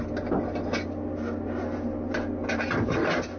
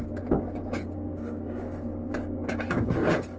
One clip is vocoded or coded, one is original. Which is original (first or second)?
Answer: first